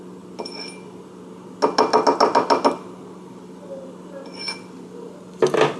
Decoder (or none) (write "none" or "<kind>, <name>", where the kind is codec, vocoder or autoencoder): none